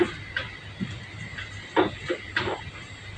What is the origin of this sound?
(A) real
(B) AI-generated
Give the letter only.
A